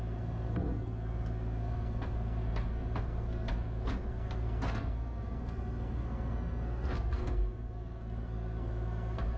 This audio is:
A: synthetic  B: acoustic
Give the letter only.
A